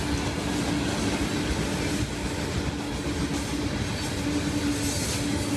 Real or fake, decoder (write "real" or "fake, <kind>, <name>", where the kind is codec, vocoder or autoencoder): real